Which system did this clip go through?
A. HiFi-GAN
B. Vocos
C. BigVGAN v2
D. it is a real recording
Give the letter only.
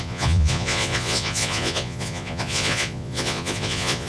B